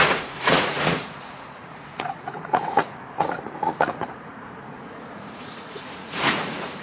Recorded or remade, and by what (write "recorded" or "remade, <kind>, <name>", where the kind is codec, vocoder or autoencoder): remade, vocoder, Vocos